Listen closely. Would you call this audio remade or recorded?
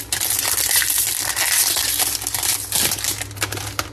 recorded